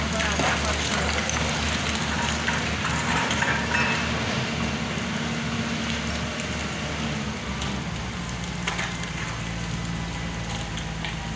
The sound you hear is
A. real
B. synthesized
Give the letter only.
A